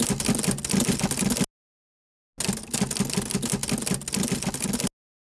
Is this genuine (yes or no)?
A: yes